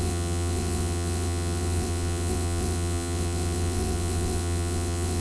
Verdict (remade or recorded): remade